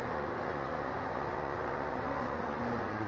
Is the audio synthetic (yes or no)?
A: yes